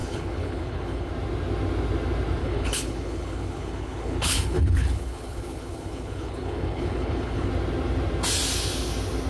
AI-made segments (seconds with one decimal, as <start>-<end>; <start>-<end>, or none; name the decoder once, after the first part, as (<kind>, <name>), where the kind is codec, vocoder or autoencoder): 0.0-1.1 (codec, HILCodec); 2.4-7.5